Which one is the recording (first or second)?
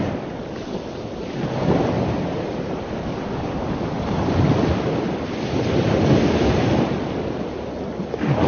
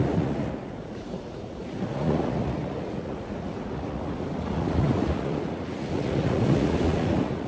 first